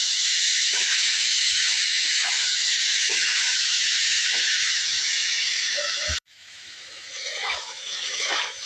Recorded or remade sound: remade